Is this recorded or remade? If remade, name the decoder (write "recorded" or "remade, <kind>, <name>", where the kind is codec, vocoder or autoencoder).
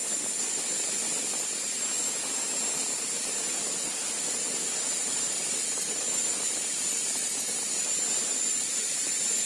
remade, vocoder, BigVGAN v2